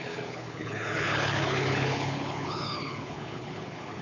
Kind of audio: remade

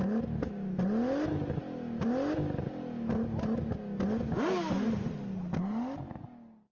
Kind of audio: recorded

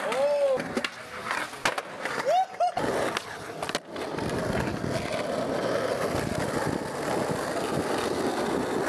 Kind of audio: recorded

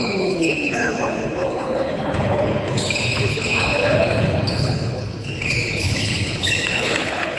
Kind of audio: remade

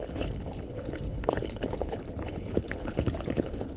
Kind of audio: remade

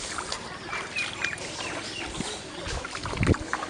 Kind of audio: recorded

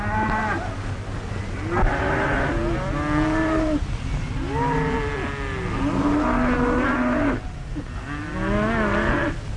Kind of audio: recorded